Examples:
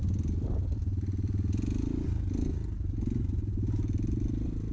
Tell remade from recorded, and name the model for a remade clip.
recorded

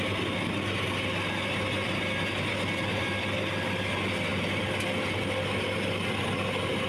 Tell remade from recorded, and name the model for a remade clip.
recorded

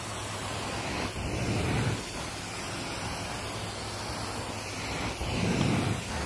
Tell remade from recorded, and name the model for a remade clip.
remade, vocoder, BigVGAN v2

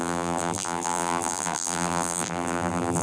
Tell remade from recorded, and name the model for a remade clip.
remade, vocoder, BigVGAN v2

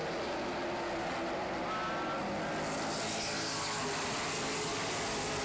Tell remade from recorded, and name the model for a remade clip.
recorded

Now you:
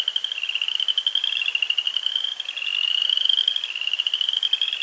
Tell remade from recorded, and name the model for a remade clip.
recorded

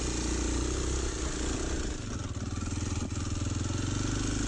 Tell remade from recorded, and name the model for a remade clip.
recorded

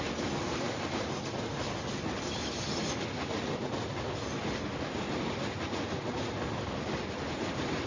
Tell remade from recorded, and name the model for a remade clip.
recorded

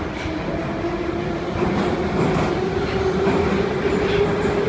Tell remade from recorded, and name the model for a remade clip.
recorded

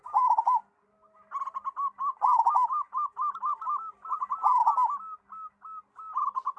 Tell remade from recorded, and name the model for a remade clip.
recorded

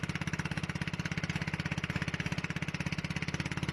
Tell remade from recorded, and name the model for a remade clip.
recorded